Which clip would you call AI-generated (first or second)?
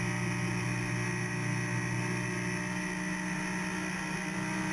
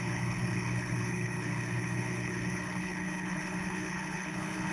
second